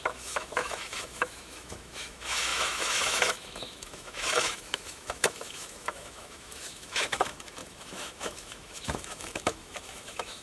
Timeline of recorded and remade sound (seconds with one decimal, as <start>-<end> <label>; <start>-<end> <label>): 0.0-10.4 remade